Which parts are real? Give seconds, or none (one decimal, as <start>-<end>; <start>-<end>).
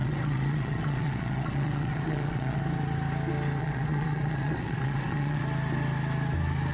2.6-3.6; 5.4-6.7